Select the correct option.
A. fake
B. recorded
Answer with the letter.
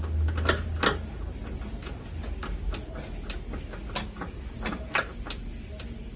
B